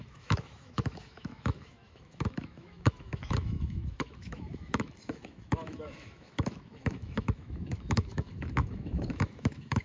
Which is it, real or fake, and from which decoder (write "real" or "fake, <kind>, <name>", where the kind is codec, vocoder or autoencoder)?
fake, autoencoder, DAC-VAE